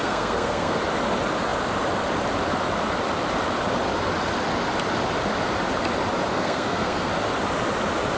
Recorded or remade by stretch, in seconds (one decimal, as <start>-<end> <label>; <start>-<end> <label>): 0.0-0.8 remade; 0.8-6.3 recorded; 6.3-7.1 remade; 7.1-8.2 recorded